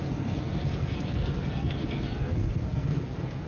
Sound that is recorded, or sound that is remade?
remade